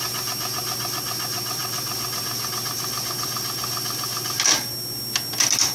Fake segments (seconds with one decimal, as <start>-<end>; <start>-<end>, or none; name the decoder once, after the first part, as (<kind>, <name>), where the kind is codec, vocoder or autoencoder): none